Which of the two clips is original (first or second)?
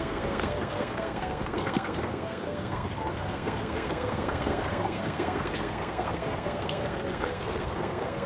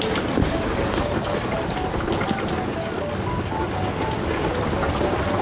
second